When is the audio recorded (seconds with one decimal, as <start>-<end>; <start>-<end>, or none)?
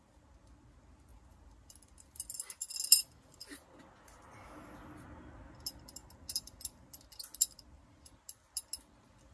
0.0-9.3